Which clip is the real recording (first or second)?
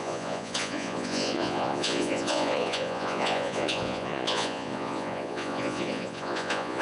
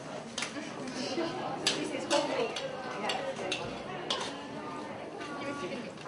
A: second